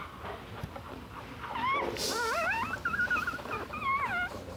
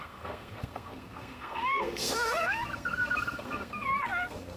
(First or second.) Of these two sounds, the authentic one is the first